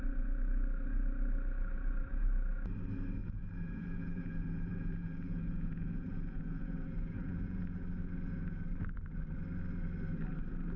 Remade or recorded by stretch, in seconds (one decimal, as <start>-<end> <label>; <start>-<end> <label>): 0.0-3.2 recorded; 3.2-7.6 remade; 7.6-10.8 recorded